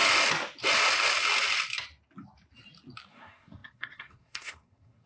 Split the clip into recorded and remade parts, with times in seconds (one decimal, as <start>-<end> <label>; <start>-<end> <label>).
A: 0.0-3.1 recorded; 3.1-5.1 remade